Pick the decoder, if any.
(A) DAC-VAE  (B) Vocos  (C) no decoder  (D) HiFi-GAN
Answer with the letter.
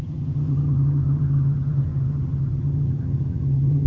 D